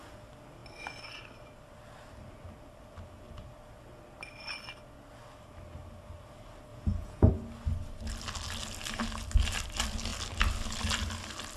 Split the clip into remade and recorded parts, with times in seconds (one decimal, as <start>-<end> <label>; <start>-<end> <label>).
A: 0.0-6.7 recorded; 6.7-7.3 remade; 7.3-11.6 recorded